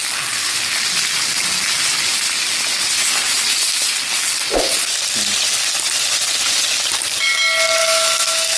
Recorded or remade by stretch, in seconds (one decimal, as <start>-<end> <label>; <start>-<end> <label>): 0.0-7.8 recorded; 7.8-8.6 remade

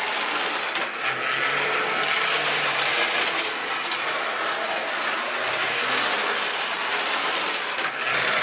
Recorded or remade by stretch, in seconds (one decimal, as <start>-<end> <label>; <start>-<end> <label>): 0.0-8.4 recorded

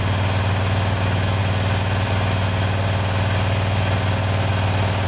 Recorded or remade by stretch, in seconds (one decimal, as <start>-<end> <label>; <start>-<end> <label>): 0.0-5.1 recorded

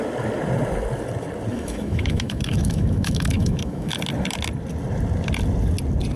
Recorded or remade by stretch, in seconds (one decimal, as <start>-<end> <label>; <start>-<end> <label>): 0.0-1.5 recorded; 1.5-3.9 remade; 3.9-6.2 recorded

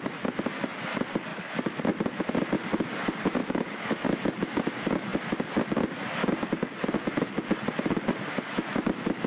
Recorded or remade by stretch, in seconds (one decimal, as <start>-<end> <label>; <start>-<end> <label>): 0.0-1.3 recorded; 1.3-1.8 remade; 1.8-3.4 recorded; 3.4-4.2 remade; 4.2-9.3 recorded